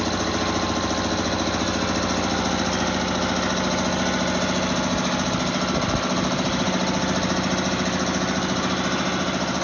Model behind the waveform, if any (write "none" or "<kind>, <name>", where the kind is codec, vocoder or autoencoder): none